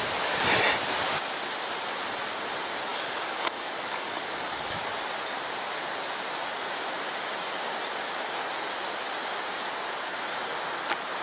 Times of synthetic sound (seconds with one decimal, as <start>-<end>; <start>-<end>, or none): 2.9-4.8